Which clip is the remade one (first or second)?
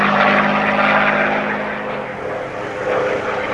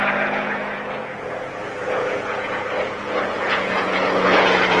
second